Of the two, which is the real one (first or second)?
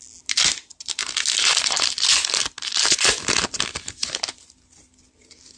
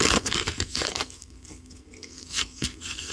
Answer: first